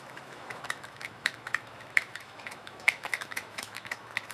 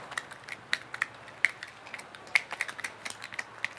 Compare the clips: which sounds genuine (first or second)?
second